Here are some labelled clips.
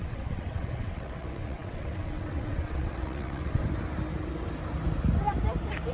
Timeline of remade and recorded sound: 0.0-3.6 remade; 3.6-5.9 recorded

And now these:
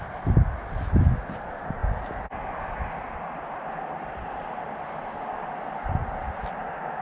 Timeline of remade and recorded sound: 0.0-1.8 remade; 1.8-6.0 recorded; 6.0-7.0 remade

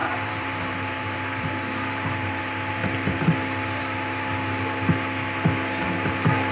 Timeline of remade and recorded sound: 0.0-2.4 remade; 2.4-6.5 recorded